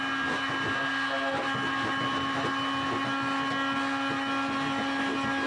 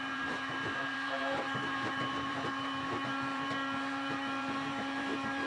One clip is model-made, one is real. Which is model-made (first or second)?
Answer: second